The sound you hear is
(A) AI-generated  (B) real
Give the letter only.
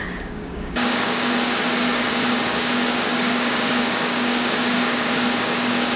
A